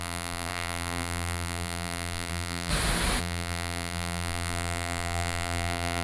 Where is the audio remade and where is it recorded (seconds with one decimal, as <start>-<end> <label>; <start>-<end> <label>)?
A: 0.0-2.7 remade; 2.7-3.2 recorded; 3.2-6.0 remade